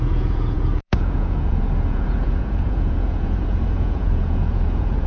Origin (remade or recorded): remade